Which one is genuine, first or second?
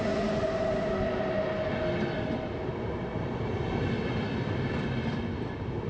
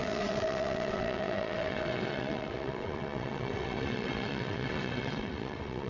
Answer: first